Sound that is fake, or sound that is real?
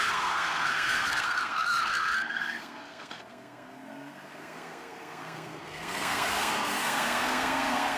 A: fake